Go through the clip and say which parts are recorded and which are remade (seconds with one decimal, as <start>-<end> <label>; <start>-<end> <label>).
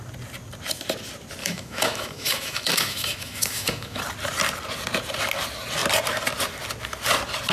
0.0-1.4 recorded; 1.4-4.0 remade; 4.0-7.5 recorded